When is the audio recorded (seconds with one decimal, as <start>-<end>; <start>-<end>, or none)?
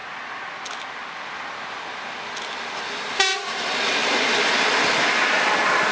0.0-5.9